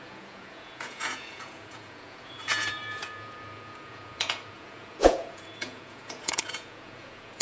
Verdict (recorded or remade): remade